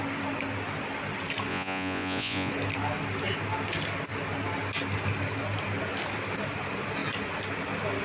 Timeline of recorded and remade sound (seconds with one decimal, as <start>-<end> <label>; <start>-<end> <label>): 0.0-1.5 recorded; 1.5-2.5 remade; 2.5-8.0 recorded

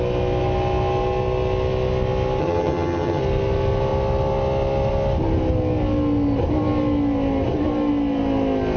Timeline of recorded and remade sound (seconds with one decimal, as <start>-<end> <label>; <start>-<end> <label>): 0.0-2.4 recorded; 2.4-3.2 remade; 3.2-8.8 recorded